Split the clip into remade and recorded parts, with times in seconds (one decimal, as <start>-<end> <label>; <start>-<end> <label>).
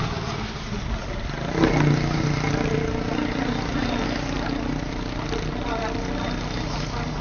0.0-7.2 recorded